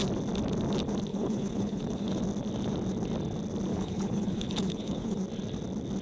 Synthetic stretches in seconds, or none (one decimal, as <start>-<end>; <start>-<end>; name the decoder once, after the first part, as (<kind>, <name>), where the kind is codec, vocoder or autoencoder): 1.1-2.2 (codec, HILCodec); 3.7-5.2